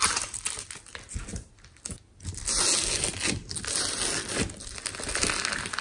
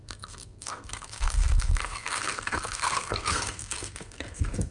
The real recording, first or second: first